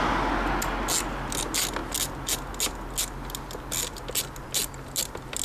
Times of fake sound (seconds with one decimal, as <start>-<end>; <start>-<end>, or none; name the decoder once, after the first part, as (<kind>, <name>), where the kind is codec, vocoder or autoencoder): none